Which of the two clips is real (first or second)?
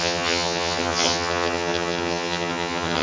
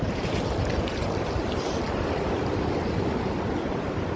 second